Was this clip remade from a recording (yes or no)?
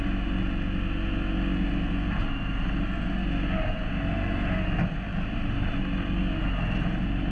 no